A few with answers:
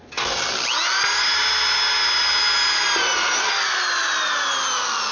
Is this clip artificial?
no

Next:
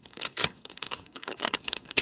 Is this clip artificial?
yes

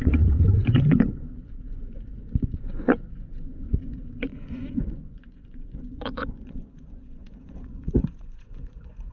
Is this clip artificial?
yes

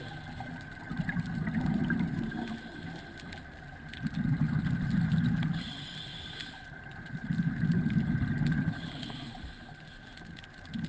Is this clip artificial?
no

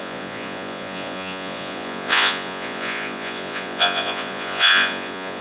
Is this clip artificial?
yes